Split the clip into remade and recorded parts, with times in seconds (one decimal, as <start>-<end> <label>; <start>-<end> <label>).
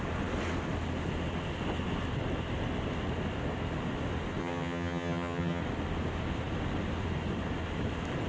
0.0-4.4 recorded; 4.4-5.6 remade; 5.6-8.3 recorded